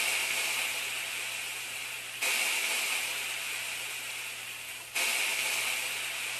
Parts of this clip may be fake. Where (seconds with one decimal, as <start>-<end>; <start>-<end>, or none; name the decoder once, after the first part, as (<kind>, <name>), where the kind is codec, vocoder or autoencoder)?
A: 5.3-6.0 (vocoder, BigVGAN v2)